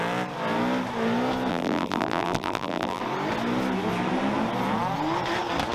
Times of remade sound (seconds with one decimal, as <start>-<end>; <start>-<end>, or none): 1.5-3.0